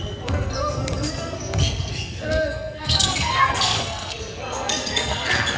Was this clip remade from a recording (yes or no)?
yes